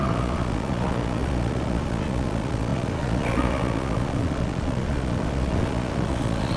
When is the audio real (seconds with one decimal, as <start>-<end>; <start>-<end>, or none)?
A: none